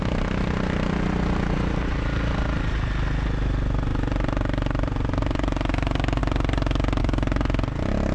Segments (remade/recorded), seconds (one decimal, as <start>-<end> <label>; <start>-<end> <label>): 0.0-8.1 recorded